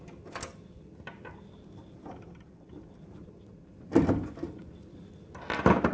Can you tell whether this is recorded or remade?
recorded